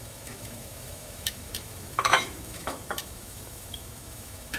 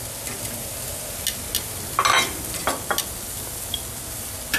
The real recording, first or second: second